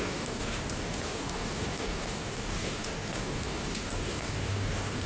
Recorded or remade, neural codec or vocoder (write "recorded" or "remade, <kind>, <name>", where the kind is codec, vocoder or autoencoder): remade, codec, DAC